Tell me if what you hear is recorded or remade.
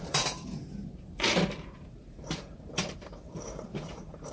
remade